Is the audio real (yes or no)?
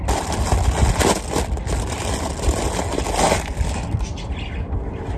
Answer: yes